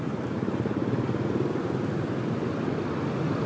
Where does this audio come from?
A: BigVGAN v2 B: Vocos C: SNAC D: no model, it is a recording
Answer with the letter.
A